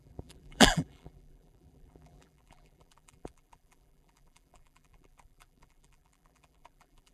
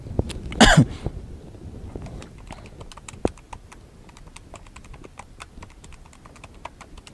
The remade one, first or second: first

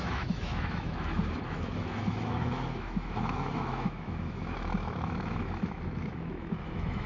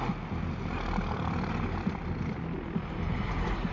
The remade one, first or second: first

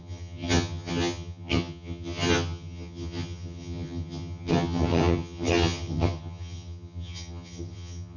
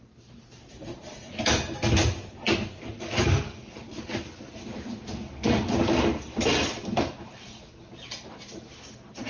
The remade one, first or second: first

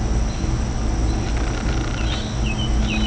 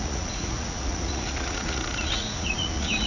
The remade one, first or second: second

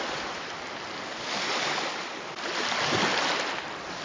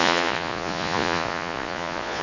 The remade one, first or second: second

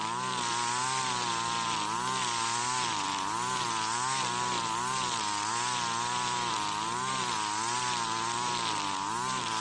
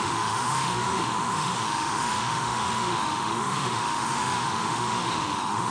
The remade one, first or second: second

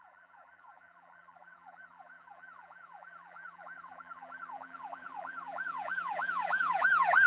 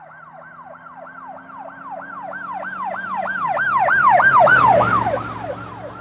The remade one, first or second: first